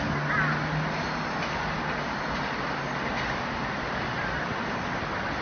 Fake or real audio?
real